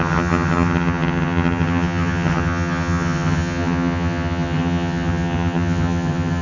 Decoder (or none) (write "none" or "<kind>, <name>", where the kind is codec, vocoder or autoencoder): vocoder, HiFi-GAN